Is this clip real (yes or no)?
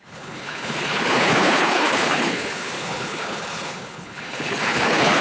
no